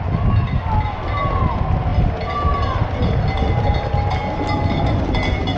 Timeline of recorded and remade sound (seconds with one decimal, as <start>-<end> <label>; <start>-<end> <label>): 0.0-5.6 recorded